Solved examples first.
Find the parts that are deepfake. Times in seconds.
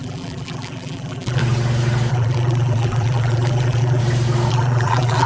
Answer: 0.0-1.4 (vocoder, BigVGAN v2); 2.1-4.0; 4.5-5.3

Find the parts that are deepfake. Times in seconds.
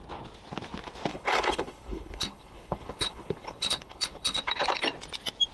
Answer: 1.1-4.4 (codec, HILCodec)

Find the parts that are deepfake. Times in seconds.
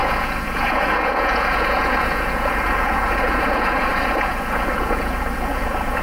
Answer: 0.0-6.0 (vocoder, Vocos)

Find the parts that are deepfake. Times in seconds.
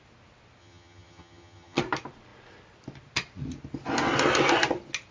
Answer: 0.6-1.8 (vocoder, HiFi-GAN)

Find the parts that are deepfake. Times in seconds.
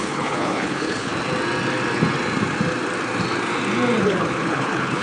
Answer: 0.0-1.1 (codec, HILCodec); 4.0-5.0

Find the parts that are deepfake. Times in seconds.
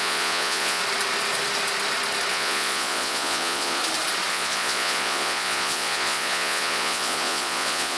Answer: 0.0-0.8 (vocoder, Vocos); 2.3-3.8; 4.3-8.0